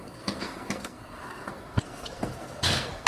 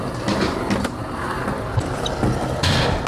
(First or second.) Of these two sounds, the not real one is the first